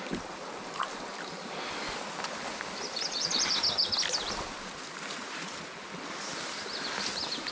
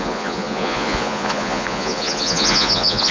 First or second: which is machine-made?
second